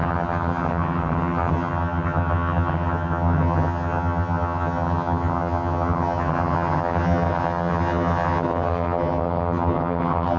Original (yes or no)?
no